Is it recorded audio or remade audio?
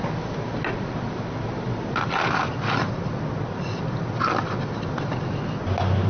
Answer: recorded